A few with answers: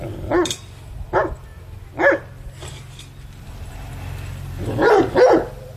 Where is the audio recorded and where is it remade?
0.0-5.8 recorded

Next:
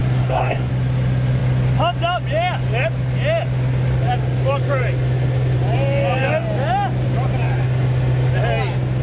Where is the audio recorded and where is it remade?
0.0-0.7 remade; 0.7-9.0 recorded

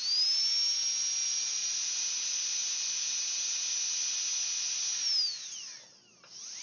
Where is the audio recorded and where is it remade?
0.0-6.6 recorded

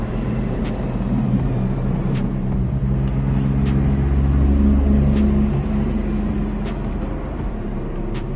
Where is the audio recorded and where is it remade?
0.0-2.8 remade; 2.8-6.9 recorded; 6.9-8.4 remade

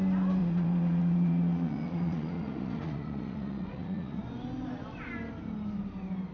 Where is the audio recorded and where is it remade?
0.0-0.4 recorded; 0.4-4.2 remade; 4.2-6.3 recorded